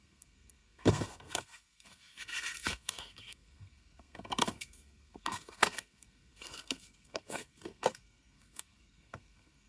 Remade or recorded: remade